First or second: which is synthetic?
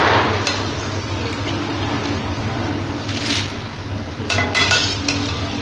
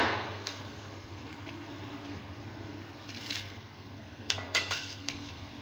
second